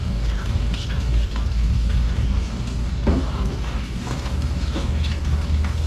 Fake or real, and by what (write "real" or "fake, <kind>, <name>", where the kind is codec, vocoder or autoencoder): fake, codec, DAC